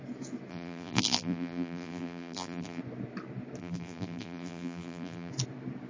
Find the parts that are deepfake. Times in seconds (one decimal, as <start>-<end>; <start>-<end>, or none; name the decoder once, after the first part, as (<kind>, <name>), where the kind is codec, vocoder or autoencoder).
0.5-2.8 (vocoder, BigVGAN v2); 3.6-5.3